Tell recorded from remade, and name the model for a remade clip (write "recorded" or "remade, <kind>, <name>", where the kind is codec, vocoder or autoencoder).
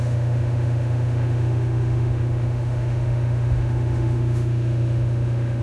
remade, autoencoder, DAC-VAE